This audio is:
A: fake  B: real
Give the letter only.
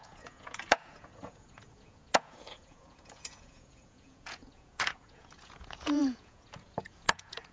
A